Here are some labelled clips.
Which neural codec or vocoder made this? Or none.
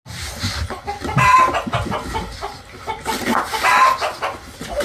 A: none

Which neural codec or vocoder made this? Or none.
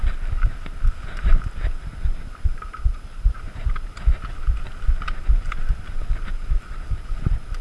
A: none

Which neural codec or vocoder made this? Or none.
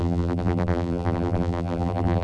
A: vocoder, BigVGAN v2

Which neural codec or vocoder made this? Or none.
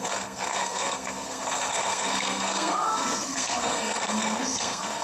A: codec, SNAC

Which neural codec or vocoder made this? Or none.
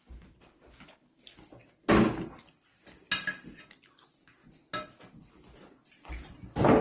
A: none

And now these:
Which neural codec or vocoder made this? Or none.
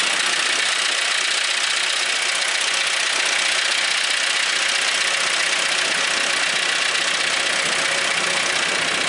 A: none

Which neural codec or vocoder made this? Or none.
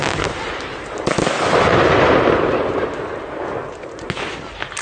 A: none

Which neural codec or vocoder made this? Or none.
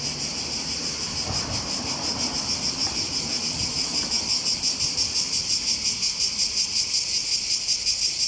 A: none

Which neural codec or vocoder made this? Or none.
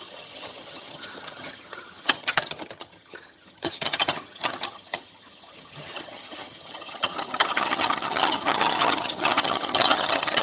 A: vocoder, HiFi-GAN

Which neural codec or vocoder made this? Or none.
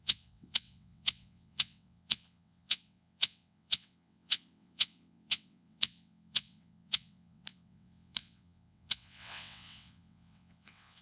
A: vocoder, WaveNeXt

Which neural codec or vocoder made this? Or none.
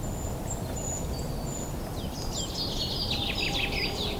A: none